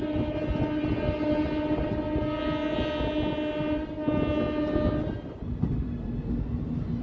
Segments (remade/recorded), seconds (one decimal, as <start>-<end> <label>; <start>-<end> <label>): 0.0-7.0 recorded